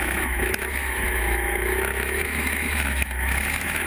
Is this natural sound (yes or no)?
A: no